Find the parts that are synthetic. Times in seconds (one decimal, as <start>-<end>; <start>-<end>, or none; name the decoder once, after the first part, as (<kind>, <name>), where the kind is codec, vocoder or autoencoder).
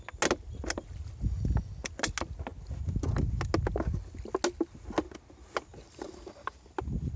5.7-6.5 (vocoder, BigVGAN v2)